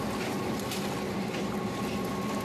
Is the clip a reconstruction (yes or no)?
no